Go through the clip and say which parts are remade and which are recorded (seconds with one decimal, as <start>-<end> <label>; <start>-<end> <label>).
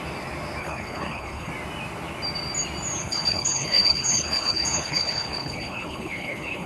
0.0-0.6 recorded; 0.6-1.5 remade; 1.5-3.0 recorded; 3.0-6.7 remade